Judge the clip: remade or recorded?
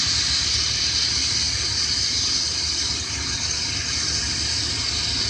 recorded